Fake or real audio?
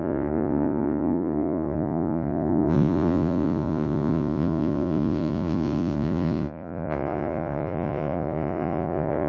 fake